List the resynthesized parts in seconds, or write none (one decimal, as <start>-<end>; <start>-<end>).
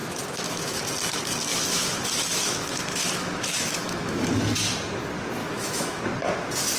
0.0-0.8; 1.5-4.3; 5.4-6.0